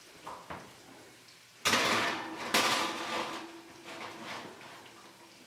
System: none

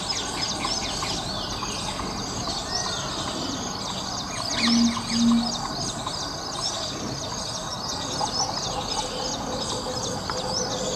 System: none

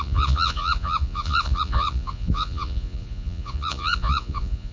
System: vocoder, Vocos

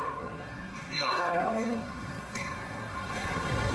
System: codec, SNAC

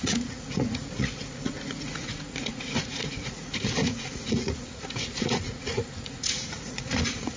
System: vocoder, Vocos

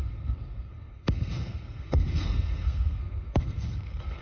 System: codec, SNAC